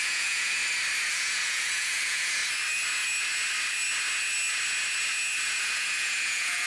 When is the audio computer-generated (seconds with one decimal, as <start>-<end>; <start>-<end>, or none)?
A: 0.0-0.6; 1.1-2.4; 5.6-6.7